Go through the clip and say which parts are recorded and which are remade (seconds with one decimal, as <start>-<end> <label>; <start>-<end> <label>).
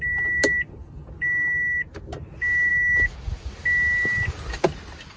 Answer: 0.0-5.2 recorded